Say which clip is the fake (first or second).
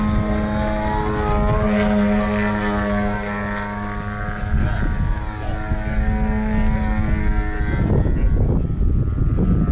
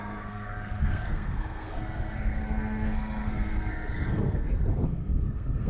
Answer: second